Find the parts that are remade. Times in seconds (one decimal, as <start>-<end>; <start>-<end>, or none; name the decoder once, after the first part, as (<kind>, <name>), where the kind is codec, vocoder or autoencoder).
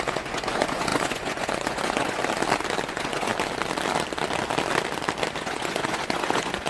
0.0-2.2 (vocoder, Vocos); 2.9-3.3; 5.4-6.7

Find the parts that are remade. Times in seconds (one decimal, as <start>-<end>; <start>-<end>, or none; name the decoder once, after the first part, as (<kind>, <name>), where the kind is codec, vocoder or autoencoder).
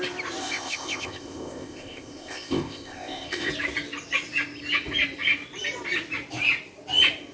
0.4-3.5 (codec, ZipCodec)